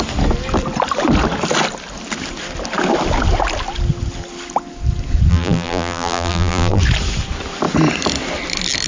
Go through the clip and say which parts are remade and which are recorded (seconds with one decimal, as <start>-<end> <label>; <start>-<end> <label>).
0.0-5.3 recorded; 5.3-6.8 remade; 6.8-8.9 recorded